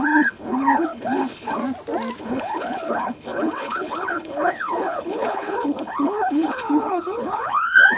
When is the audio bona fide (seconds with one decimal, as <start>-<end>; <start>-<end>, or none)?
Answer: 1.6-2.2